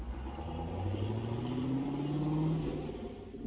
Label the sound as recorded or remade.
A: recorded